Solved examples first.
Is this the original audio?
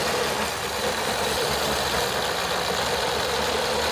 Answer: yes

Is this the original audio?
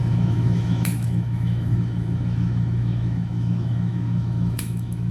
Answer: no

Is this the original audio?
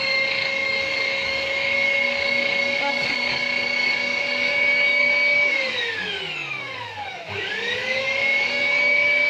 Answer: no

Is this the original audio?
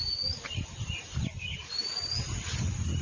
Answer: yes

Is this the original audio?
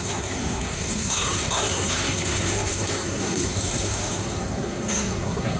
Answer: no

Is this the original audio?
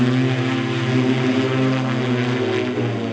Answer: yes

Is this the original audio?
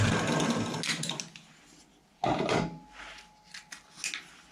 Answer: yes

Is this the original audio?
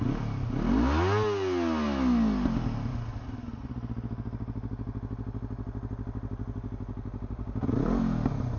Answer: yes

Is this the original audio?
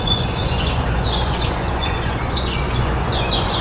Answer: no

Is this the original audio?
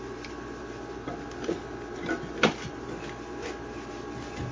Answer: yes